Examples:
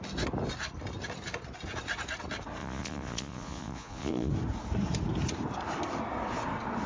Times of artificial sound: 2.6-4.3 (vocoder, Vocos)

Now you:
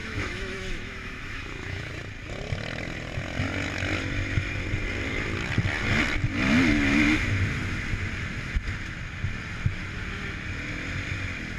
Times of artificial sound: 0.0-1.9 (autoencoder, DAC-VAE)

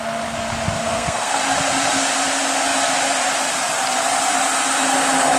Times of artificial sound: 0.8-1.4 (codec, SNAC)

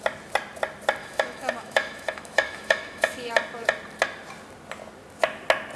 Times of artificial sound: 1.0-3.3 (autoencoder, DAC-VAE)